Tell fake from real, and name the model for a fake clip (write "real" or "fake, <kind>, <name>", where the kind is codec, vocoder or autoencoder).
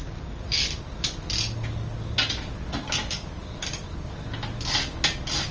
real